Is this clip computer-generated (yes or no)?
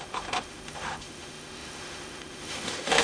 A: yes